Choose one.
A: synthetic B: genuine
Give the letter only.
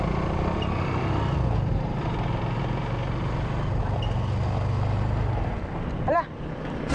B